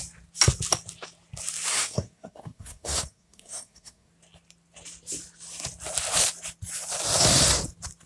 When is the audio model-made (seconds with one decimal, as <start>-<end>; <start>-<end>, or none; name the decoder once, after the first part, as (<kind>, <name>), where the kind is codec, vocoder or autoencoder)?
1.7-4.1 (codec, SNAC)